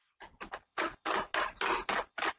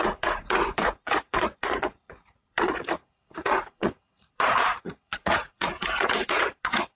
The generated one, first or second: second